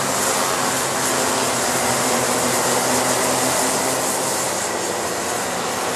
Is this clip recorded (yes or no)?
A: yes